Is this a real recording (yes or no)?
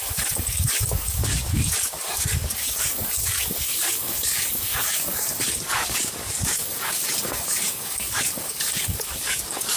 no